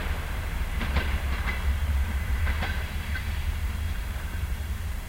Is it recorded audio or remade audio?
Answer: remade